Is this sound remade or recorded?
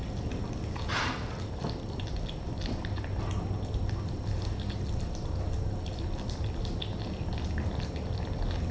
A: recorded